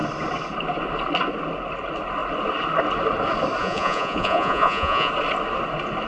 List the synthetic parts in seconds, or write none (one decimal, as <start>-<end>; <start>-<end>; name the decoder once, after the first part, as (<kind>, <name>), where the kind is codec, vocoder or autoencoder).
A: 3.6-5.1 (vocoder, Vocos)